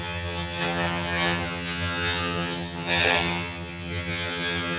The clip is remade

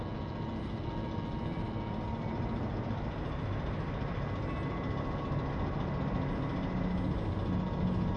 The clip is recorded